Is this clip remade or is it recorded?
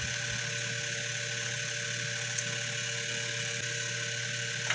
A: recorded